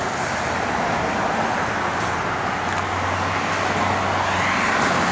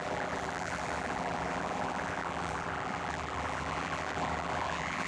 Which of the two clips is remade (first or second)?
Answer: second